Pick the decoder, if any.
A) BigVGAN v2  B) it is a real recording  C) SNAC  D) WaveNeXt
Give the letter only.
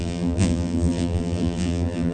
A